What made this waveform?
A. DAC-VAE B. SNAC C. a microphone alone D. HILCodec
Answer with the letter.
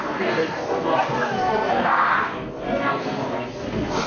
B